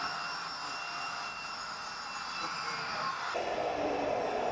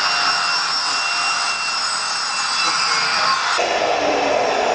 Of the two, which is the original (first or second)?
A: second